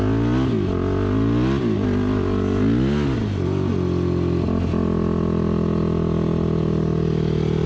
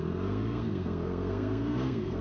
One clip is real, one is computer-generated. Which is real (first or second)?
first